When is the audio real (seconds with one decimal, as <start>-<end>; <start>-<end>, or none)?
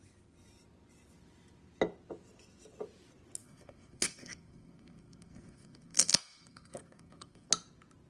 0.0-3.4; 7.5-8.1